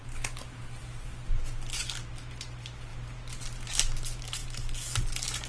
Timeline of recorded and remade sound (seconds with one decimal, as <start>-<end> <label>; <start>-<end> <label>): 0.0-5.5 recorded